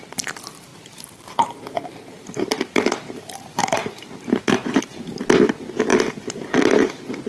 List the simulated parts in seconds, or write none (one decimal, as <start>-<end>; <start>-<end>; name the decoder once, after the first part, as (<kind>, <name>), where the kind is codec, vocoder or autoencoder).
0.7-4.8 (vocoder, BigVGAN v2); 5.9-6.6